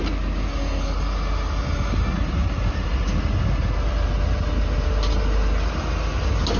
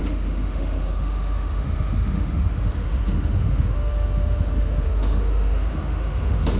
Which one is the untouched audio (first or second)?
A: first